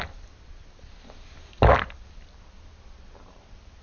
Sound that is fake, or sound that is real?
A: fake